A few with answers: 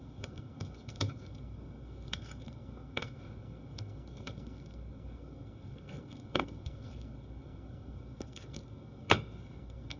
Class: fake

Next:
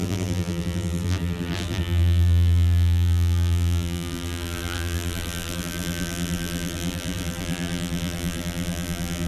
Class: fake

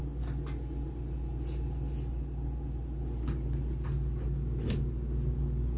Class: real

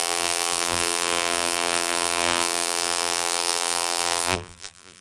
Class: fake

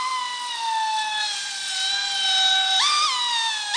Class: real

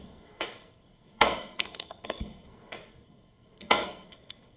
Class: fake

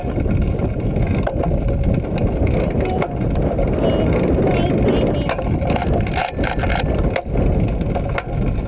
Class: real